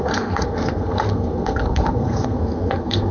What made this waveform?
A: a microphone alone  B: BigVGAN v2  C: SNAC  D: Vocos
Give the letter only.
C